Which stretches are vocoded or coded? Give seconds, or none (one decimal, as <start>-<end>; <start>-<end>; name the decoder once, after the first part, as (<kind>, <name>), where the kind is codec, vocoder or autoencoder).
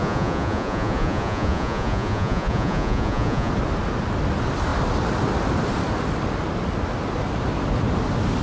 0.0-3.5 (vocoder, Vocos)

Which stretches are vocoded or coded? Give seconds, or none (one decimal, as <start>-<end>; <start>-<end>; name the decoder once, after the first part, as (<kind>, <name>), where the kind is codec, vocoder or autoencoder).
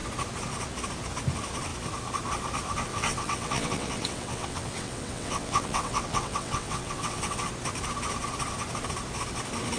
2.9-7.5 (vocoder, WaveNeXt)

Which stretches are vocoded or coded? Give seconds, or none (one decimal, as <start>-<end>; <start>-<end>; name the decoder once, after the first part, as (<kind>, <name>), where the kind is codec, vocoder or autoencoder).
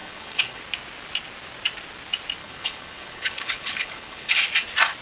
0.0-0.6 (codec, HILCodec); 2.4-4.4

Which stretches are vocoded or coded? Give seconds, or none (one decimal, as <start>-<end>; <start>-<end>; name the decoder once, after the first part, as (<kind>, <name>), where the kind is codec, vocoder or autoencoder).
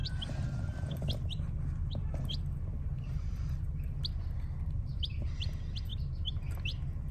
0.0-1.0 (vocoder, BigVGAN v2); 1.8-5.3